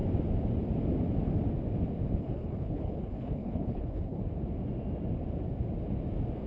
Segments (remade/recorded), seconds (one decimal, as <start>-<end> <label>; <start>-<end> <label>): 0.0-2.2 recorded; 2.2-4.2 remade; 4.2-6.5 recorded